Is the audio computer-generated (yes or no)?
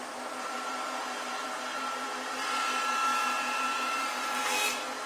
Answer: yes